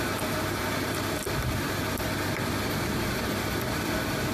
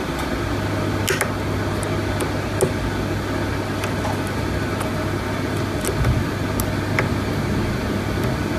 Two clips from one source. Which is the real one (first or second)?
second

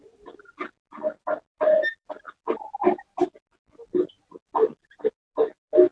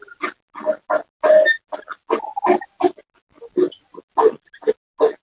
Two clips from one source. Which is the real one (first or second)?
second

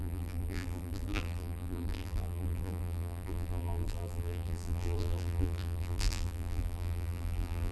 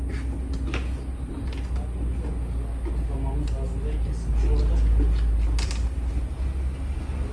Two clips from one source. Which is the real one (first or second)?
second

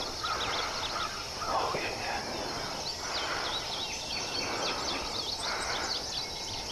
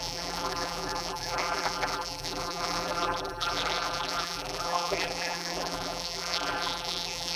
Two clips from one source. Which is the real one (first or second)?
first